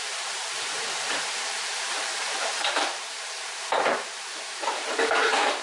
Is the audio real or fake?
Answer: fake